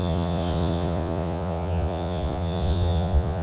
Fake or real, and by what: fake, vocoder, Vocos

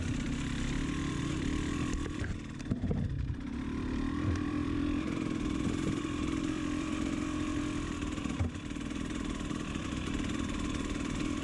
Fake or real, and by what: fake, vocoder, BigVGAN v2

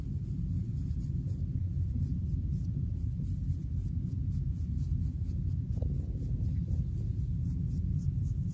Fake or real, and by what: real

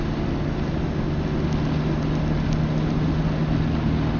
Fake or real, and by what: real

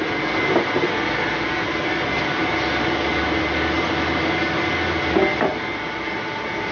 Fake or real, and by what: real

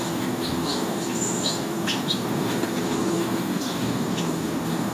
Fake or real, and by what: fake, codec, DAC